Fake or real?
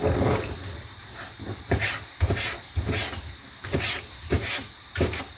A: real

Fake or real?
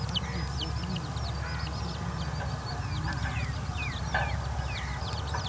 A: real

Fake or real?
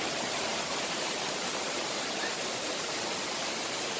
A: fake